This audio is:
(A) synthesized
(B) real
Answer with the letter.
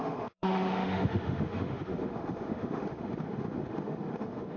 A